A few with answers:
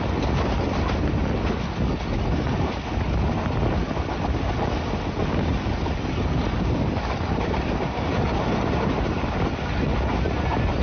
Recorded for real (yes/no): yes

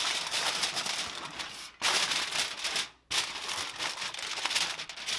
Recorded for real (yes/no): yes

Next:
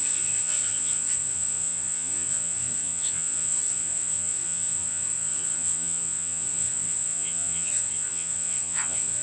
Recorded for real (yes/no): no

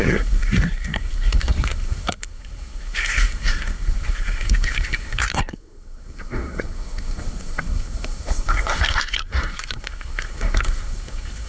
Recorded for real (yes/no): no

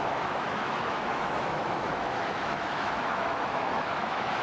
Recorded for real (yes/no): no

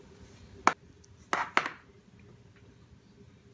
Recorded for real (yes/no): yes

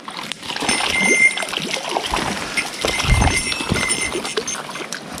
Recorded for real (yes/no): yes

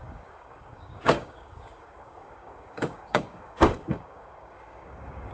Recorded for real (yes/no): no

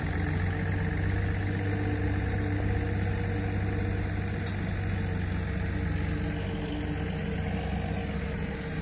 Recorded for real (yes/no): yes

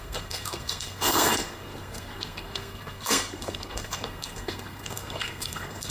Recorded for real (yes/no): no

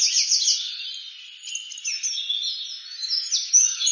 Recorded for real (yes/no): yes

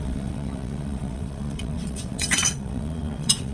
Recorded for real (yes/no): no